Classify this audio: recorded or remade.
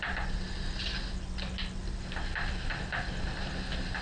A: recorded